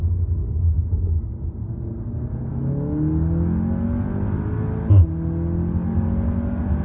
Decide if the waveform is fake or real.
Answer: real